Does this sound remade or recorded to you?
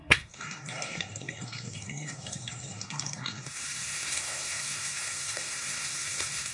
remade